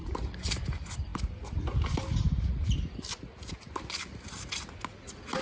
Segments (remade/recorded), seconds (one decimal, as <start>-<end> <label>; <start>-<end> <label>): 0.0-5.4 recorded